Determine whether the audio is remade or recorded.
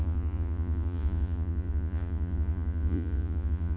remade